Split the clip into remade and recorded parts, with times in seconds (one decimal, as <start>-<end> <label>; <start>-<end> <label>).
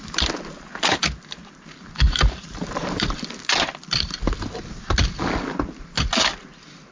0.0-1.4 recorded; 1.4-3.3 remade; 3.3-6.9 recorded